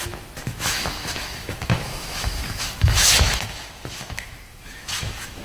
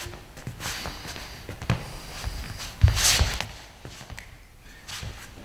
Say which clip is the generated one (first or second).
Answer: first